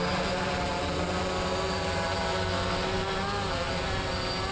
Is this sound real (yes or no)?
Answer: yes